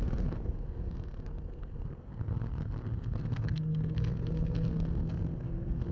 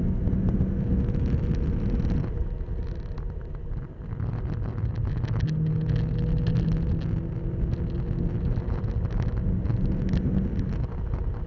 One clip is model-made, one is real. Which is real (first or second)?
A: second